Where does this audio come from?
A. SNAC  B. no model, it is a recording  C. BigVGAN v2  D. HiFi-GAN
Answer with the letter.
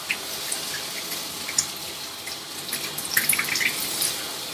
B